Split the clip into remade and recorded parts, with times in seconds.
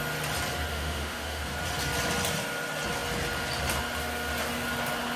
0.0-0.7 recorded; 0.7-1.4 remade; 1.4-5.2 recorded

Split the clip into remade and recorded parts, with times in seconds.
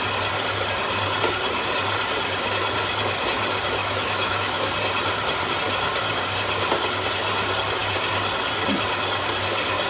0.0-3.8 recorded; 3.8-4.7 remade; 4.7-9.9 recorded